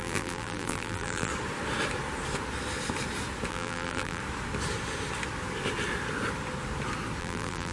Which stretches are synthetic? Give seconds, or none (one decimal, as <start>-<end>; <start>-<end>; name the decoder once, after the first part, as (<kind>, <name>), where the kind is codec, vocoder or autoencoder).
0.0-1.3 (vocoder, BigVGAN v2); 3.5-4.2; 7.2-7.7